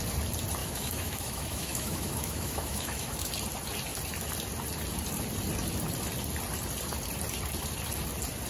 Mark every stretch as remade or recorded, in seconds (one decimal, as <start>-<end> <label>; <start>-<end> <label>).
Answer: 0.0-0.6 recorded; 0.6-3.3 remade; 3.3-8.5 recorded